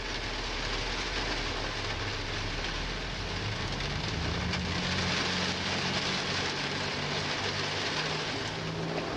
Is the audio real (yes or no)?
yes